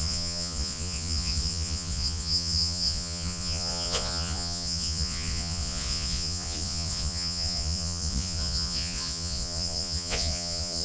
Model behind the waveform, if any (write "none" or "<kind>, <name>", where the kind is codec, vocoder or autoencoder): vocoder, Vocos